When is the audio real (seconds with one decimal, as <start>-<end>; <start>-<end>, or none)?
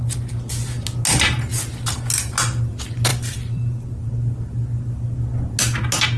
0.0-3.1; 4.1-6.2